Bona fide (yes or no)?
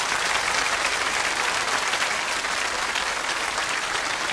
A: no